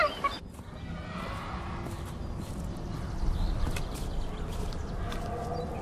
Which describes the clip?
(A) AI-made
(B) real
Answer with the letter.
B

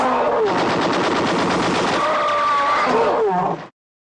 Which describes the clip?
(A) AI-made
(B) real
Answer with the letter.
B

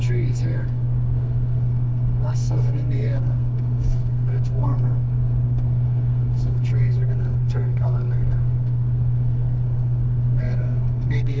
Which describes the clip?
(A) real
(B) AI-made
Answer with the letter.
B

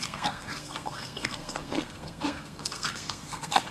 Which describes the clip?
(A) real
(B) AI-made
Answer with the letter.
B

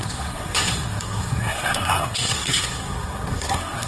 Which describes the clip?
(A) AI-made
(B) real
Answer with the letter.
A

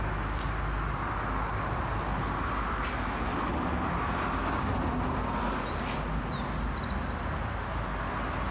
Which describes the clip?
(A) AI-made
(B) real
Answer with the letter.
B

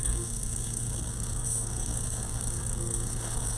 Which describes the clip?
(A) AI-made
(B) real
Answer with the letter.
A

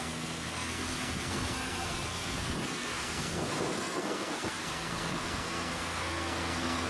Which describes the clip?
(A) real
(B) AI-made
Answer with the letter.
B